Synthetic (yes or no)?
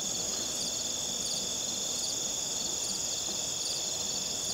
no